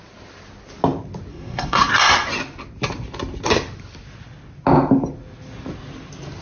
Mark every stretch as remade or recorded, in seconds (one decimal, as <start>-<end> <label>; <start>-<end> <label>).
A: 0.0-1.3 recorded; 1.3-1.9 remade; 1.9-6.4 recorded